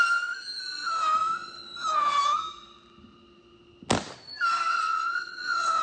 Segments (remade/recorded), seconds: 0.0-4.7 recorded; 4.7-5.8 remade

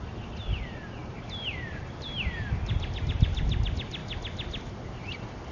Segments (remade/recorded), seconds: 0.0-5.5 recorded

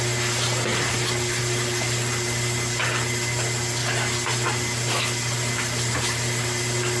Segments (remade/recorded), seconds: 0.0-7.0 recorded

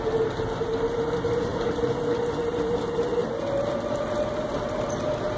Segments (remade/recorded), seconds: 0.0-5.4 recorded

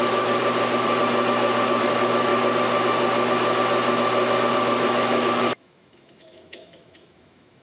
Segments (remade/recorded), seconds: 0.0-0.4 remade; 0.4-1.8 recorded; 1.8-2.3 remade; 2.3-4.5 recorded; 4.5-7.6 remade